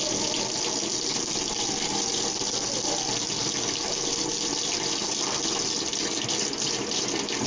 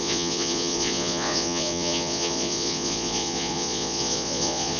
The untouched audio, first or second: first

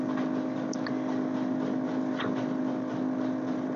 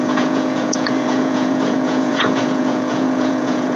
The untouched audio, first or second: first